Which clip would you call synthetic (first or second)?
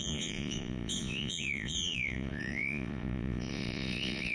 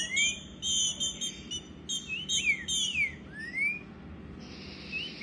first